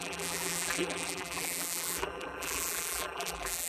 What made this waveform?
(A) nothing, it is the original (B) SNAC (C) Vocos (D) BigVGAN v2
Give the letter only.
D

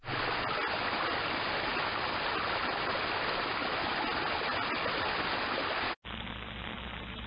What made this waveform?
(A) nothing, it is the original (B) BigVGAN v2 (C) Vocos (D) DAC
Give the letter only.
A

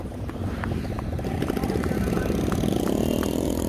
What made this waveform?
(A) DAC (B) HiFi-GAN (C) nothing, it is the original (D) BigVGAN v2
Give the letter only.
D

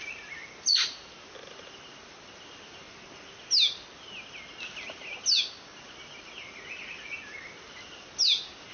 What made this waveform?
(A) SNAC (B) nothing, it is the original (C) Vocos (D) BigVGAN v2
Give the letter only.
B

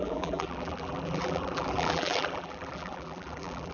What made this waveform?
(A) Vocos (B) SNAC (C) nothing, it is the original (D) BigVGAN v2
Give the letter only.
D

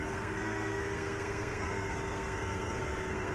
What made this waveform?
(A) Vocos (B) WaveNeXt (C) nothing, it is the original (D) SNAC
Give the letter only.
D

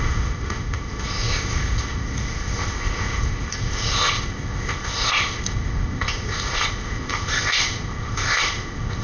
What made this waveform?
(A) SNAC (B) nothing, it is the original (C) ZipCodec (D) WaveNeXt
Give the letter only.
C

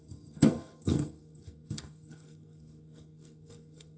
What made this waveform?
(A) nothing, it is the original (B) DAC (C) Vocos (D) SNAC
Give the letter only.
D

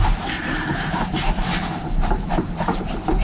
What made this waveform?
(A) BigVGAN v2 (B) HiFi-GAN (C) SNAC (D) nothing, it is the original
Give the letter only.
A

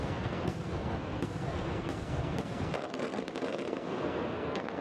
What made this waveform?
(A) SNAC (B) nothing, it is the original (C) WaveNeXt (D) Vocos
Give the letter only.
A